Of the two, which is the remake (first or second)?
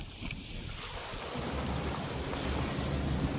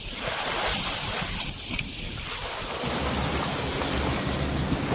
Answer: second